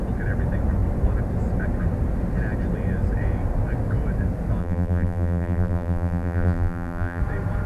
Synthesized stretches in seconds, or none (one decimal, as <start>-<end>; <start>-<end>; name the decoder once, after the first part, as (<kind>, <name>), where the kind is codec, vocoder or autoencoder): 4.6-7.2 (vocoder, BigVGAN v2)